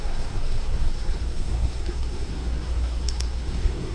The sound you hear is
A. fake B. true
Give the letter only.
A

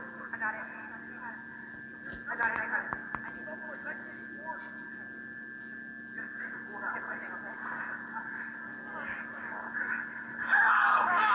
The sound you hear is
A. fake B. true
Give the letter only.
B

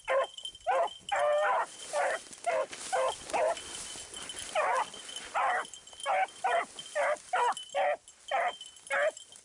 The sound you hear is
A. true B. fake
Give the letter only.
A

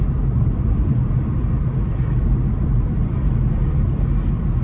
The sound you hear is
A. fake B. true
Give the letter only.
B